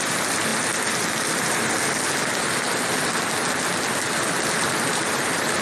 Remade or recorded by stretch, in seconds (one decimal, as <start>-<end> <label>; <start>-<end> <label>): 0.0-0.5 remade; 0.5-3.9 recorded; 3.9-5.6 remade